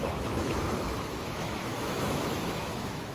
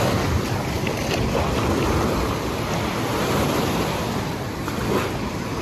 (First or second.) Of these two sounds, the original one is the second